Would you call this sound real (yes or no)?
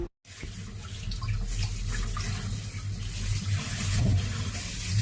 yes